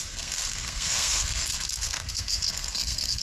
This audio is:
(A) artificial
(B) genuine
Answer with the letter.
A